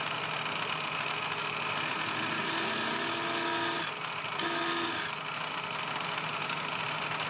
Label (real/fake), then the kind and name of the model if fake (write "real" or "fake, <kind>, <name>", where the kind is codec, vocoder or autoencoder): real